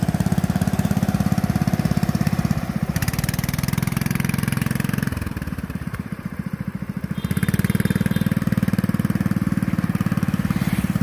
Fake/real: fake